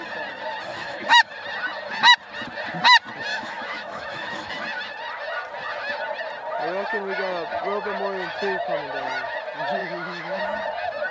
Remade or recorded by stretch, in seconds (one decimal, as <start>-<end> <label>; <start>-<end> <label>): 0.0-0.7 recorded; 0.7-1.3 remade; 1.3-3.3 recorded; 3.3-4.5 remade; 4.5-9.8 recorded; 9.8-10.4 remade; 10.4-11.1 recorded